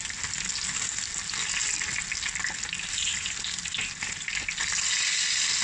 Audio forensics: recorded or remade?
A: recorded